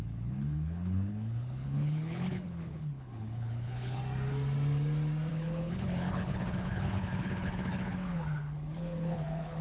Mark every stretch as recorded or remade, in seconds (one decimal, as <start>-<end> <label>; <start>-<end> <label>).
0.0-4.0 remade; 4.0-5.3 recorded; 5.3-9.6 remade